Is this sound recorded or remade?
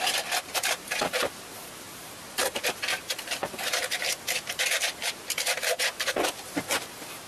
remade